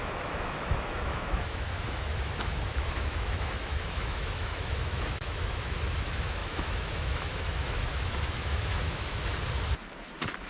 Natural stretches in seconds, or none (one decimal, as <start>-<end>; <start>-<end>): 9.3-10.5